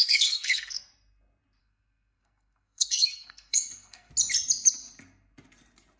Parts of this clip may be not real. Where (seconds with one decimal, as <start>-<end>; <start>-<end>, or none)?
0.0-0.9; 1.6-4.1

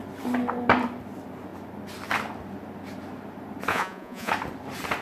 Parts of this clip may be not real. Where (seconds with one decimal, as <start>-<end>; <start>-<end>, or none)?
3.7-4.3